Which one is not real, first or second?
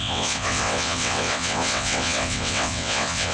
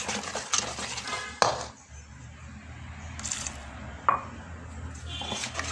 first